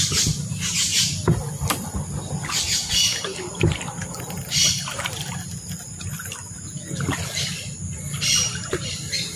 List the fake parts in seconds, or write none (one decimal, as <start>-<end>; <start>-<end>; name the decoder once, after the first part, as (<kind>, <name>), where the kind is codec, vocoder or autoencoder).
none